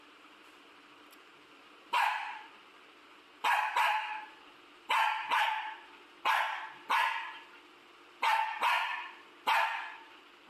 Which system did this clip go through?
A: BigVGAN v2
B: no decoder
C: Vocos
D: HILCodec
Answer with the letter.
A